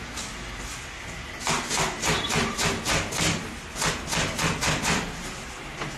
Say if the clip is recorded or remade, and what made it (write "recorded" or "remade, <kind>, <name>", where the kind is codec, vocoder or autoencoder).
recorded